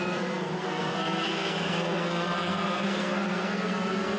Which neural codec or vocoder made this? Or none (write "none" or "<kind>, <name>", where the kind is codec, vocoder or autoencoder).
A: codec, SNAC